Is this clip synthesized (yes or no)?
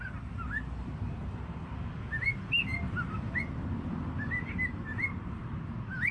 no